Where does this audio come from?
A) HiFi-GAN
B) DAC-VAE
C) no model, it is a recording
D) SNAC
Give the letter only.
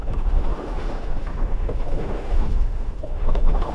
B